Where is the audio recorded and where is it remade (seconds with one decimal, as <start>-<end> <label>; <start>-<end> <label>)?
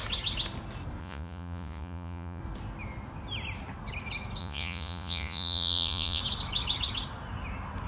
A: 0.0-1.0 recorded; 1.0-2.4 remade; 2.4-4.4 recorded; 4.4-6.2 remade; 6.2-7.9 recorded